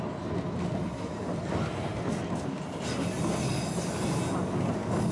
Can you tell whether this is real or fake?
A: real